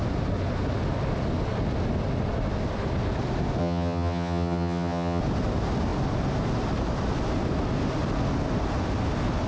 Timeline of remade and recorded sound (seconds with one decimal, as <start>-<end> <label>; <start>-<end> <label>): 0.0-3.6 recorded; 3.6-5.2 remade; 5.2-9.5 recorded